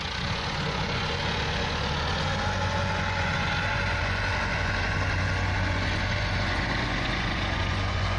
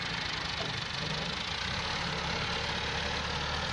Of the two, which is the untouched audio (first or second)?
second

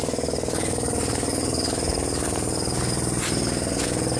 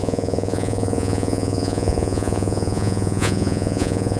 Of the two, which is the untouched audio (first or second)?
first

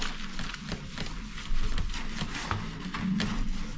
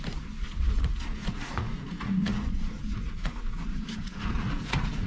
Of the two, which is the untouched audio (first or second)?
first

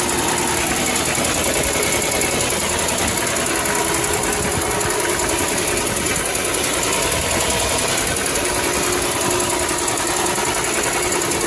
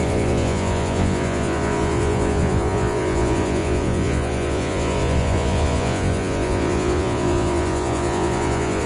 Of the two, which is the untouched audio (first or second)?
first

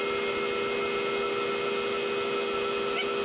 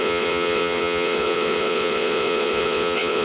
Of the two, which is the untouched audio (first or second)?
first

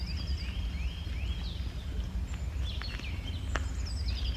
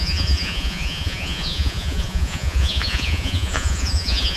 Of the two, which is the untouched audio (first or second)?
first